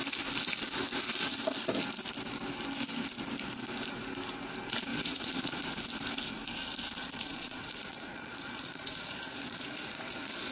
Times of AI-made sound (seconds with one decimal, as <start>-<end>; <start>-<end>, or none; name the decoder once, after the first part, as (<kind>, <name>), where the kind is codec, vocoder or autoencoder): 4.9-5.6 (vocoder, Vocos); 7.0-10.5